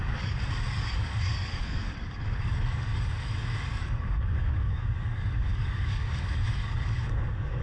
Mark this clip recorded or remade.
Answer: remade